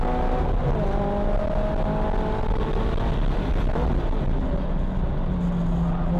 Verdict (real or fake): real